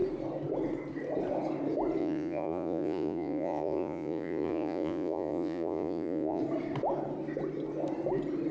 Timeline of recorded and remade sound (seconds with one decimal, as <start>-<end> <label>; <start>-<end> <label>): 0.0-2.0 recorded; 2.0-6.4 remade; 6.4-8.5 recorded